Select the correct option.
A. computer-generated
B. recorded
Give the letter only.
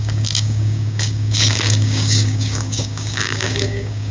A